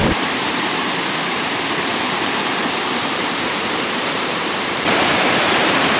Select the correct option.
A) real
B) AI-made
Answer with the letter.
B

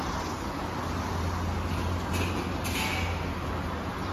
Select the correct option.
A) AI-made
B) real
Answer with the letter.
B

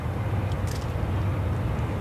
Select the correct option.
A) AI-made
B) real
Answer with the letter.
B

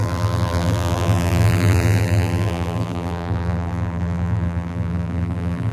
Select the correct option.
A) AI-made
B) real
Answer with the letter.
A